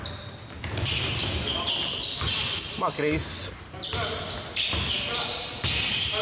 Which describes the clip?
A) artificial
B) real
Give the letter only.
B